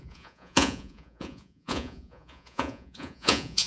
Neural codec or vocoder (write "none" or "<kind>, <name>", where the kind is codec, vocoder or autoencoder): vocoder, Vocos